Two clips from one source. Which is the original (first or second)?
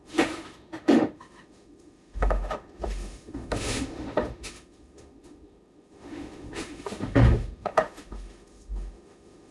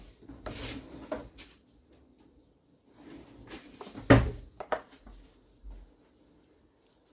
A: second